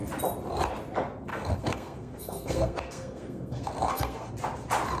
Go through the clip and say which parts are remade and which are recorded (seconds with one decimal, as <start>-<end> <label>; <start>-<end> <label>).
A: 0.0-1.3 recorded; 1.3-4.3 remade; 4.3-5.0 recorded